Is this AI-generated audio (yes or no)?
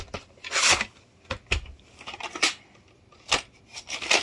no